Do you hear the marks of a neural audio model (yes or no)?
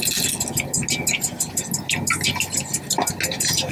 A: no